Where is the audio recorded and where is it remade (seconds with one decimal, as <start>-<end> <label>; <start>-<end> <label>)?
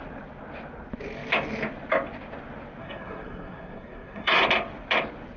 0.0-2.8 recorded; 2.8-4.4 remade; 4.4-5.4 recorded